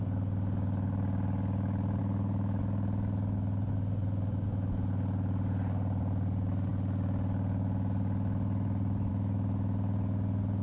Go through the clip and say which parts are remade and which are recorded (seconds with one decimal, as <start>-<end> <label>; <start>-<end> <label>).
0.0-2.0 recorded; 2.0-2.6 remade; 2.6-10.6 recorded